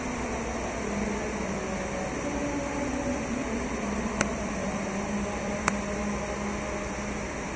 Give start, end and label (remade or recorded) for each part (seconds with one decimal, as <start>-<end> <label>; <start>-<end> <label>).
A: 0.0-3.4 recorded; 3.4-6.0 remade; 6.0-7.6 recorded